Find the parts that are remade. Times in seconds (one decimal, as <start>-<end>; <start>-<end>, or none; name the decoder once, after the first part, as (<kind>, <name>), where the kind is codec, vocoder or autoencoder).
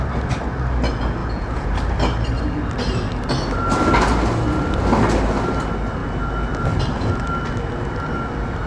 1.2-1.7 (vocoder, Vocos)